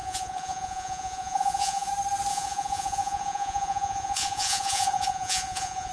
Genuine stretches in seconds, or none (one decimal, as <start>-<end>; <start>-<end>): 1.9-2.3